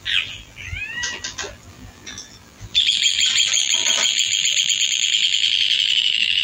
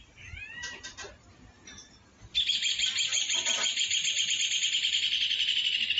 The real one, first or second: second